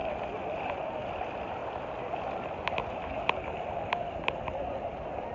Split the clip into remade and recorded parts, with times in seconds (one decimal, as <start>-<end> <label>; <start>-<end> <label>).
0.0-5.3 recorded